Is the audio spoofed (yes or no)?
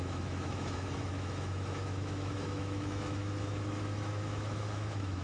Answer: yes